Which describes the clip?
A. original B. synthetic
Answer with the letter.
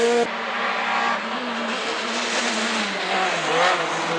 A